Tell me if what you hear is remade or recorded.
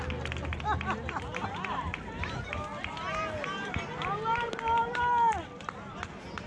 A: recorded